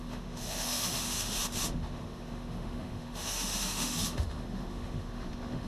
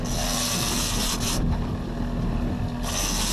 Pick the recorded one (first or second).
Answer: second